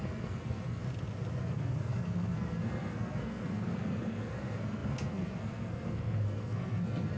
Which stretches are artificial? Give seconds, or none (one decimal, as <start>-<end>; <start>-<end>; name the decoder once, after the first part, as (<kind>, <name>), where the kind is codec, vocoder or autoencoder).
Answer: 0.0-0.8 (codec, SNAC); 1.4-7.2